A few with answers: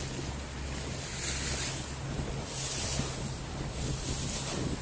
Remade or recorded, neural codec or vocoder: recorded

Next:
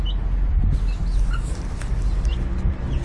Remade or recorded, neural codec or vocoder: recorded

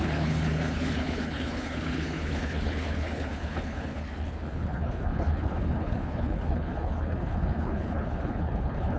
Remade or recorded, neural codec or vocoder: remade, codec, HILCodec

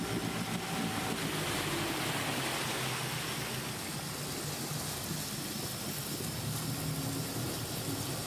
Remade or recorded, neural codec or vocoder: recorded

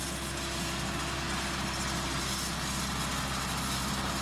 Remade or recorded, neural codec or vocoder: recorded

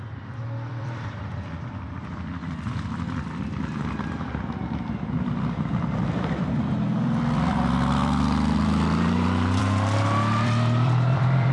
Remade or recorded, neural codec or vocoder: remade, vocoder, BigVGAN v2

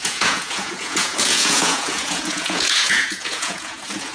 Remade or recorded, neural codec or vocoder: remade, vocoder, Vocos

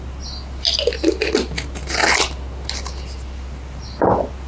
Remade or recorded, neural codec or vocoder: recorded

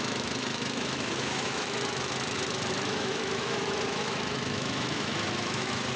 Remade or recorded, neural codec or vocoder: remade, autoencoder, DAC-VAE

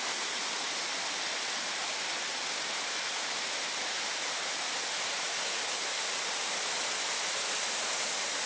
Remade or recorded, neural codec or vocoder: recorded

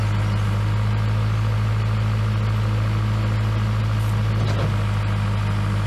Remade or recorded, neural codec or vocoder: recorded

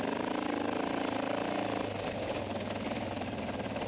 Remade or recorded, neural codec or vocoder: recorded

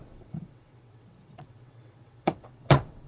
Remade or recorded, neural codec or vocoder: remade, vocoder, WaveNeXt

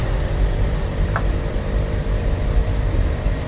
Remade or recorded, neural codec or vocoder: remade, vocoder, BigVGAN v2